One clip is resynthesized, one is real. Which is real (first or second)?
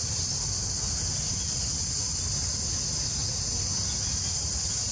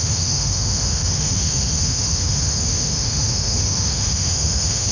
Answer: first